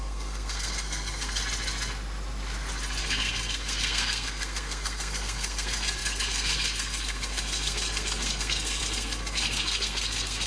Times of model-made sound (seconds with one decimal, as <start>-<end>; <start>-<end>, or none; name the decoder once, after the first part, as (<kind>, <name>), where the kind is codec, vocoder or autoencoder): 0.0-1.4 (codec, SNAC); 3.0-10.5